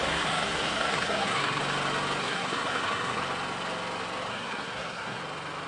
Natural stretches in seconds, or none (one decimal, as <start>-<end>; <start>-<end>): 1.6-2.2; 3.2-4.3; 5.2-5.7